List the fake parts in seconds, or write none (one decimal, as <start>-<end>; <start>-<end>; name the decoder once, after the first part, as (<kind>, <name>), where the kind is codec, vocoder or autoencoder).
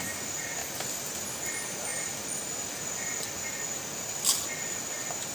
none